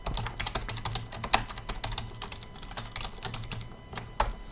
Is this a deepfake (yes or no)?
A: no